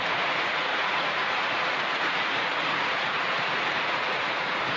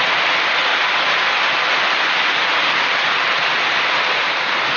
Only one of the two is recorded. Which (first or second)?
second